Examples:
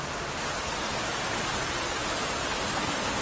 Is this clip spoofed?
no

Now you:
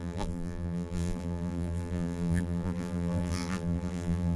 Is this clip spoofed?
yes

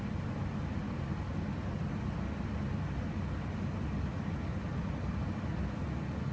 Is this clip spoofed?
no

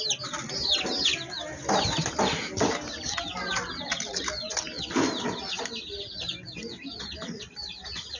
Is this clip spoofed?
no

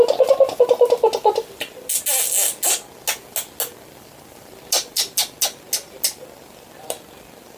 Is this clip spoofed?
no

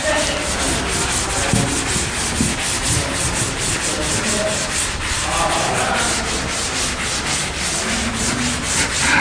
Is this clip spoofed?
no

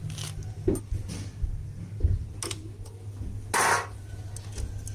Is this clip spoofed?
no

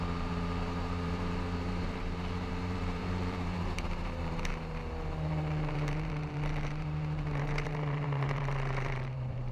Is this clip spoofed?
yes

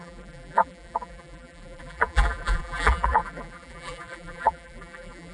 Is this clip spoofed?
yes